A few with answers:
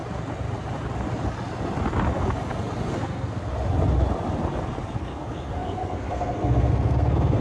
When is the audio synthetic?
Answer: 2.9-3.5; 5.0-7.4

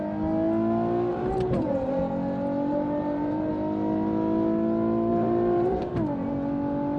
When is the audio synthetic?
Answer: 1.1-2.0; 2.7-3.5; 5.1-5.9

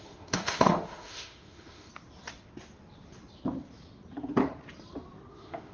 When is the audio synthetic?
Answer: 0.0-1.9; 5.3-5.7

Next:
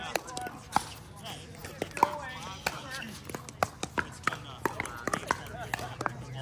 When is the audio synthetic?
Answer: none

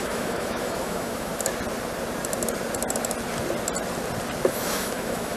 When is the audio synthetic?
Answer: 0.0-1.3; 4.5-5.4

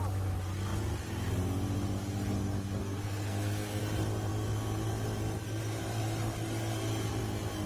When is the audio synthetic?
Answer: 2.8-3.8